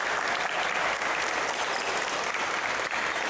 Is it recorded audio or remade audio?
recorded